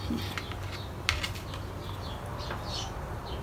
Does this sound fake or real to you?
real